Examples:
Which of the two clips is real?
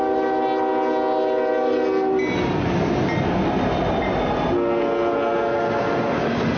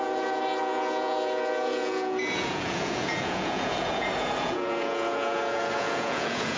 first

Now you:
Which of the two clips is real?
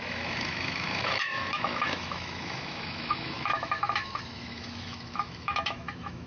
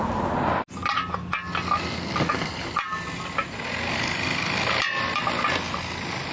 second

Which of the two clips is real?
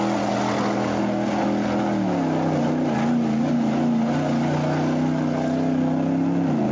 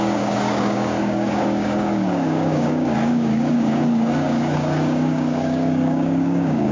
first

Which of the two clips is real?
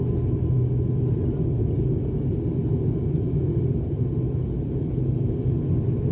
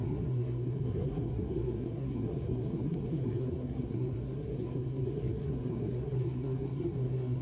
first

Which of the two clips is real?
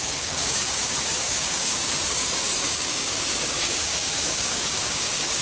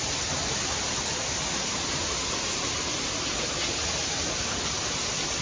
second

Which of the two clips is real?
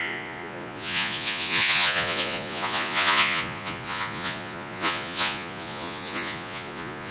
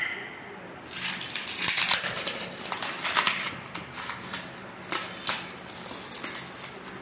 second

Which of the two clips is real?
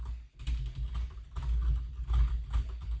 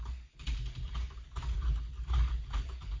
first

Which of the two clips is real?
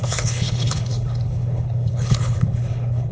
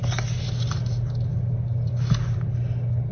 second